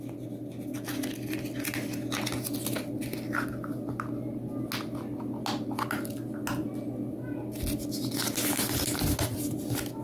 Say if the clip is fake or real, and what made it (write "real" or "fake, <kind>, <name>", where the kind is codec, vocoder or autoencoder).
real